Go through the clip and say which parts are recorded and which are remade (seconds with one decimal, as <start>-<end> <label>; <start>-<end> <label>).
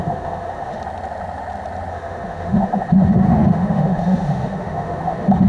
0.0-0.8 remade; 0.8-1.9 recorded; 1.9-5.5 remade